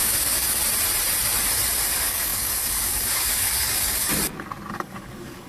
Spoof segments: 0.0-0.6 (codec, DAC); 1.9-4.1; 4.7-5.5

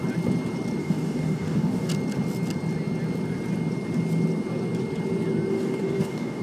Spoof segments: 0.8-1.9 (codec, DAC); 5.5-6.4

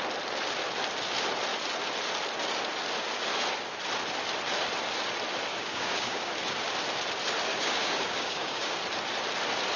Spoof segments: 5.5-6.3 (codec, DAC); 7.5-8.8

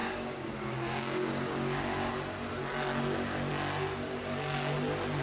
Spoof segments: 0.0-2.1 (codec, DAC)